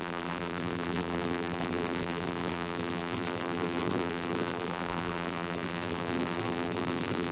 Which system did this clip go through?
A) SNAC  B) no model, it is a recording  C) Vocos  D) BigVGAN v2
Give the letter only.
D